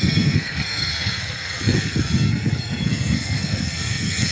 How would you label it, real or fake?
fake